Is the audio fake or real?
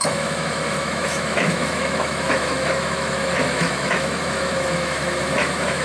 fake